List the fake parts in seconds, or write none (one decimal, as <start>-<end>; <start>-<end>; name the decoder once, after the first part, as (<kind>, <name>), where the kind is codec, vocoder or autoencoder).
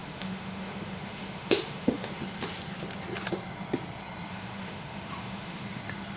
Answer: 0.0-2.1 (autoencoder, DAC-VAE); 4.3-5.8